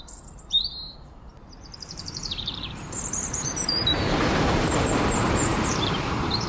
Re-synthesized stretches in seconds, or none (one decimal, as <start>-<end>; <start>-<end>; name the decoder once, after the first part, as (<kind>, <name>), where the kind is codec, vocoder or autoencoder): 0.0-6.5 (vocoder, BigVGAN v2)